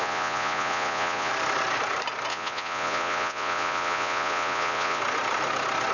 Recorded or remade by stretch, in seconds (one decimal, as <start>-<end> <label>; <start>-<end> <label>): 0.0-1.3 remade; 1.3-2.3 recorded; 2.3-5.0 remade; 5.0-5.9 recorded